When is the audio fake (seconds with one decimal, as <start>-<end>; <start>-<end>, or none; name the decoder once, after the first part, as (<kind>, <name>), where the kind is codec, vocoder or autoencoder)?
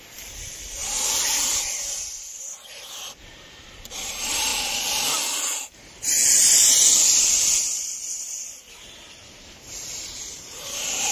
0.0-4.5 (vocoder, BigVGAN v2); 5.4-6.2; 7.4-11.1